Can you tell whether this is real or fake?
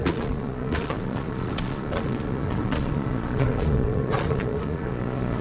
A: fake